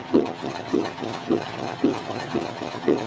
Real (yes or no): no